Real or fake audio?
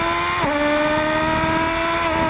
real